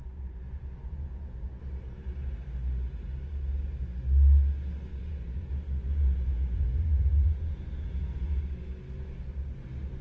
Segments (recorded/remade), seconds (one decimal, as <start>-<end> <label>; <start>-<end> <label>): 0.0-1.6 remade; 1.6-4.9 recorded; 4.9-5.5 remade; 5.5-5.9 recorded; 5.9-8.4 remade; 8.4-10.0 recorded